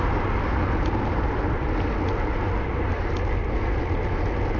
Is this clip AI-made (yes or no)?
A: no